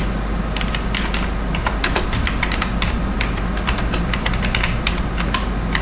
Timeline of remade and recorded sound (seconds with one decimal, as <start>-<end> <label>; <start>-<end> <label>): 0.0-1.6 recorded; 1.6-5.1 remade; 5.1-5.8 recorded